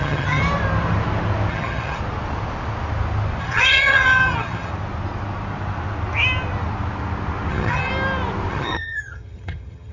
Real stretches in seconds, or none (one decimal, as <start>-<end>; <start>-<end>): 0.4-1.5; 2.0-3.4; 4.7-7.5; 7.9-8.5